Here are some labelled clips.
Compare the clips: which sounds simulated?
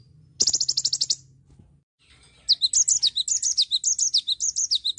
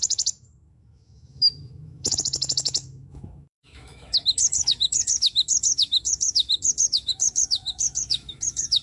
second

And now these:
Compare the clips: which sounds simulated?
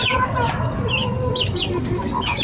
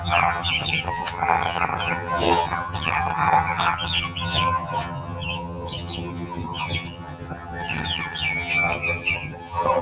second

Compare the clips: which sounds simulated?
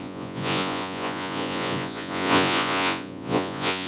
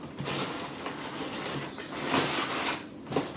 first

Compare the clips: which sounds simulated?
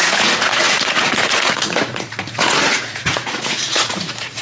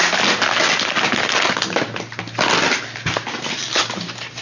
first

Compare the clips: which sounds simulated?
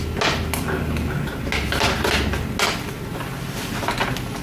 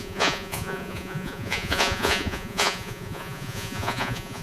second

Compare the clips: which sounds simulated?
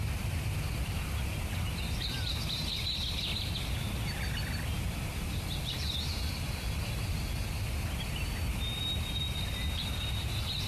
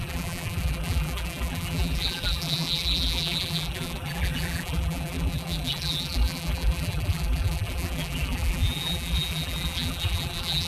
second